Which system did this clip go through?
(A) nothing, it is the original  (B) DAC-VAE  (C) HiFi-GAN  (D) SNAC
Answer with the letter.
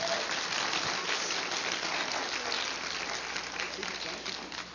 A